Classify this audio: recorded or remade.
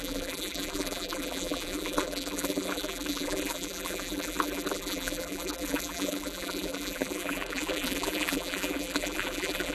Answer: remade